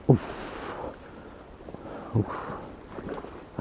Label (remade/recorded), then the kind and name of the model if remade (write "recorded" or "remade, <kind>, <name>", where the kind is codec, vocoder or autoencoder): recorded